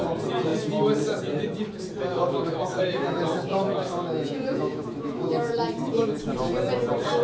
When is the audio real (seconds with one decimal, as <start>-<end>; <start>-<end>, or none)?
0.0-2.1; 5.5-7.2